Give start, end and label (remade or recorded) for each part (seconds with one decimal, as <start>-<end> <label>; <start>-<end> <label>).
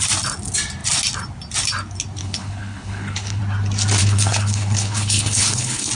0.0-2.2 recorded; 2.2-3.4 remade; 3.4-4.0 recorded; 4.0-5.9 remade